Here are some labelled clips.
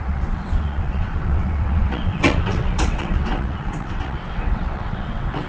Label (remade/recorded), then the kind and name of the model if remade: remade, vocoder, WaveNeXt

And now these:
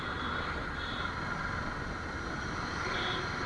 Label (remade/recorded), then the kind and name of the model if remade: recorded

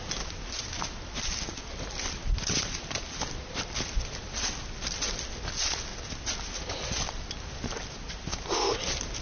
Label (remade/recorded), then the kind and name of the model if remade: recorded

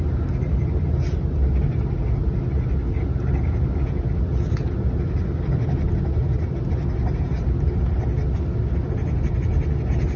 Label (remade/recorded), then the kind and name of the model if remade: recorded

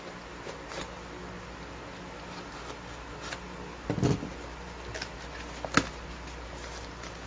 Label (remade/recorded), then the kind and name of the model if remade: recorded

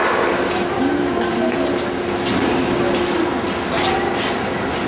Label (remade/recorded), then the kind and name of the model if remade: recorded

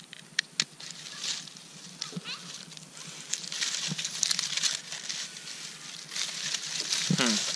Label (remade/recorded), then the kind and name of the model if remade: recorded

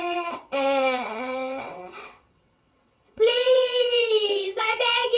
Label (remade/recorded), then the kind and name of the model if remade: remade, vocoder, WaveNeXt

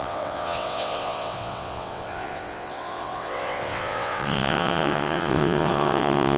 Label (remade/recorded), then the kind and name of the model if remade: remade, vocoder, WaveNeXt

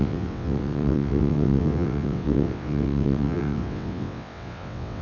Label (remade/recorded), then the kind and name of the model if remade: remade, vocoder, WaveNeXt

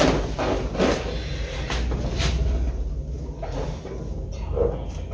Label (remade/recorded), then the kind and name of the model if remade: recorded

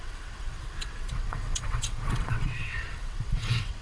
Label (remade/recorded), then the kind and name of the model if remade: remade, vocoder, WaveNeXt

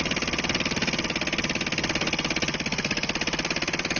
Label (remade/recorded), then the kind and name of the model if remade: recorded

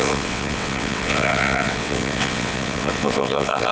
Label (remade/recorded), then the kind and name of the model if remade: remade, vocoder, WaveNeXt